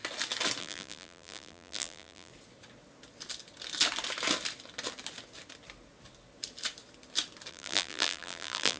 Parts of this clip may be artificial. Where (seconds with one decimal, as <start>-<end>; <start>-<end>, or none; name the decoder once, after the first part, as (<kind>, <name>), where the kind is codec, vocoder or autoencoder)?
0.6-2.3 (vocoder, BigVGAN v2); 7.5-8.8